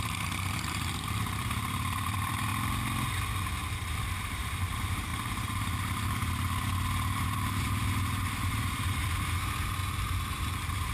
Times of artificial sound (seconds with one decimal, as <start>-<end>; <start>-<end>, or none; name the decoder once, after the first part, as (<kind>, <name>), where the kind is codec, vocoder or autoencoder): 0.0-2.5 (vocoder, BigVGAN v2); 3.9-9.8; 10.4-10.9